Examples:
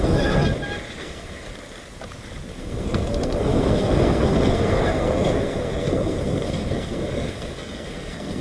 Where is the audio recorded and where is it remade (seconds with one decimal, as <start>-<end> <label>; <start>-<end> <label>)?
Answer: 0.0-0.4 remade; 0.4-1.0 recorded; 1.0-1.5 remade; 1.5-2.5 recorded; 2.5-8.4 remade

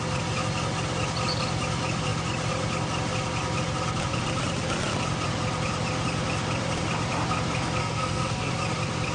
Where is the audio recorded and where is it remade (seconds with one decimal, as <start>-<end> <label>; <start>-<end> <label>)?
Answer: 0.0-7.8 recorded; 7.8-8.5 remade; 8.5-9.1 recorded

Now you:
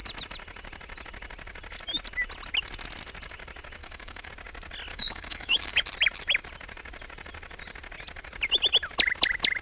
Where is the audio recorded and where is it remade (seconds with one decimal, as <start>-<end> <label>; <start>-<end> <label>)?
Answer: 0.0-3.8 recorded; 3.8-4.3 remade; 4.3-4.9 recorded; 4.9-5.8 remade; 5.8-9.6 recorded

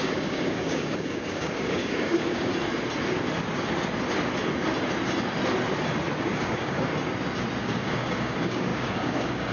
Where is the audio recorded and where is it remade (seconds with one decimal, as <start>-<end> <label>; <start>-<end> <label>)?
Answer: 0.0-2.5 remade; 2.5-6.2 recorded; 6.2-6.9 remade; 6.9-7.6 recorded; 7.6-9.5 remade

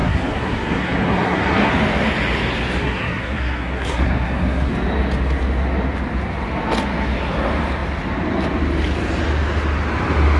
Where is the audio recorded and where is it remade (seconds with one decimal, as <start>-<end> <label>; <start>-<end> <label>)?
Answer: 0.0-1.7 remade; 1.7-2.8 recorded; 2.8-4.7 remade; 4.7-10.4 recorded

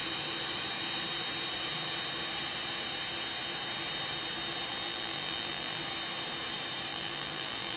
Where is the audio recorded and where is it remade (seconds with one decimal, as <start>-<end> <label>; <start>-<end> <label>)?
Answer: 0.0-4.7 recorded; 4.7-5.8 remade; 5.8-6.9 recorded; 6.9-7.8 remade